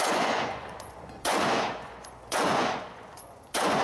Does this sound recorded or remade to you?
remade